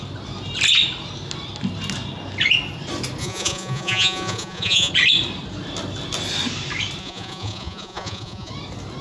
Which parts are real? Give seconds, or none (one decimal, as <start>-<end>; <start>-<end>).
0.0-3.2; 4.9-7.0; 8.5-9.0